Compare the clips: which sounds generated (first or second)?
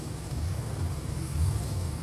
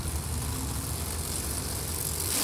first